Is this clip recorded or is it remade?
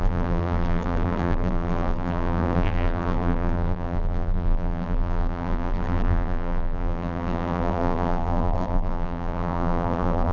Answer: remade